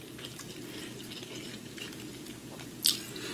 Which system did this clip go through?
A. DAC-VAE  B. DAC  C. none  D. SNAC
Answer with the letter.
C